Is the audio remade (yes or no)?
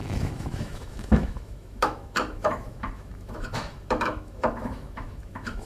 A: yes